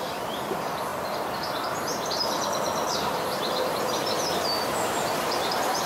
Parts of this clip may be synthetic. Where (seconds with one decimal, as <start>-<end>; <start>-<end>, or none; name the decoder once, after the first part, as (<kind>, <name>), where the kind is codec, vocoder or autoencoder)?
0.0-0.9 (vocoder, BigVGAN v2); 3.8-5.9

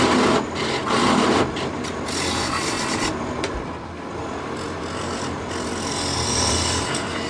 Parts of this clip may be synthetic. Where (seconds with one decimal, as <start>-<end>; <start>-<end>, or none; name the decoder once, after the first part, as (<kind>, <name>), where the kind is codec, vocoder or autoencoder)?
none

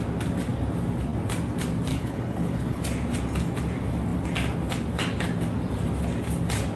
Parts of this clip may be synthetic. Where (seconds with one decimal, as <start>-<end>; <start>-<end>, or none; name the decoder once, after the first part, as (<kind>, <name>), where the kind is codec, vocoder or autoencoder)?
1.9-2.8 (codec, HILCodec)